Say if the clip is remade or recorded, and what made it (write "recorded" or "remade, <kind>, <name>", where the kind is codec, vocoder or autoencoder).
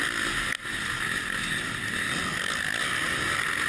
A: recorded